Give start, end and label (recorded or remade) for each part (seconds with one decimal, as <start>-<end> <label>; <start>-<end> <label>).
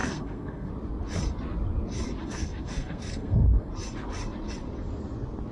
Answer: 0.0-0.7 remade; 0.7-2.2 recorded; 2.2-3.7 remade; 3.7-5.5 recorded